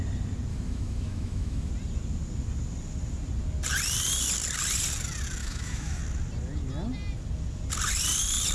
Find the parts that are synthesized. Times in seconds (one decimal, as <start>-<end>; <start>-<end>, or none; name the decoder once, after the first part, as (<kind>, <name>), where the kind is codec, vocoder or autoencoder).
0.5-1.7 (autoencoder, DAC-VAE); 5.4-6.0